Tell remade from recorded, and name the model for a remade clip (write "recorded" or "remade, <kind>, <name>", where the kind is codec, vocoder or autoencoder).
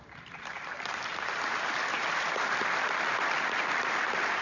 remade, vocoder, BigVGAN v2